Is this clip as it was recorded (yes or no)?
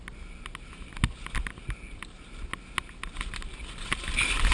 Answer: yes